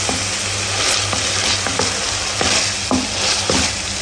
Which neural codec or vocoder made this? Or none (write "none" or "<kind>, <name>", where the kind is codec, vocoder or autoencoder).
none